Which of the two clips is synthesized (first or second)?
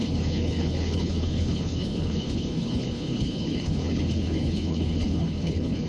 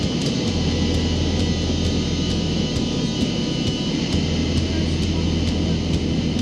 first